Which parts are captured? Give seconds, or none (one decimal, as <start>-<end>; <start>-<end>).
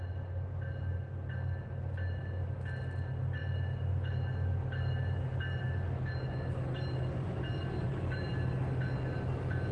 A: 0.0-9.7